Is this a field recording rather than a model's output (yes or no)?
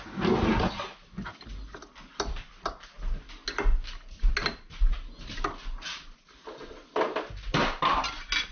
yes